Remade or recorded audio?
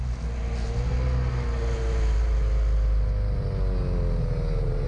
recorded